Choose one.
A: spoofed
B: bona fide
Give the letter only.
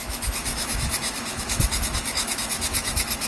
A